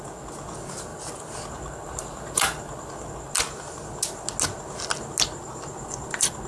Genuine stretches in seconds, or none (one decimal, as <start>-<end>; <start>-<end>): 0.0-0.9; 2.9-6.5